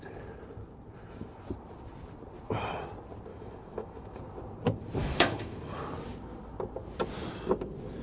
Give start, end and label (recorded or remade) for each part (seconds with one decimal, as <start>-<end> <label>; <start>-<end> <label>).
0.0-3.3 recorded; 3.3-4.2 remade; 4.2-5.0 recorded; 5.0-5.9 remade; 5.9-8.0 recorded